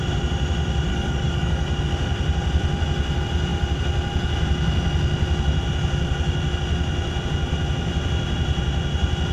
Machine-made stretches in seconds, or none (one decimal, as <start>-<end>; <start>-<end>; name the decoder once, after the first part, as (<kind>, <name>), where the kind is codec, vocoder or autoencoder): 0.9-1.8 (codec, DAC)